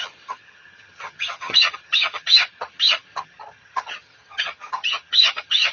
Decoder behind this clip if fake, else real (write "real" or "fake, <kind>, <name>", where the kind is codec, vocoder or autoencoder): fake, vocoder, HiFi-GAN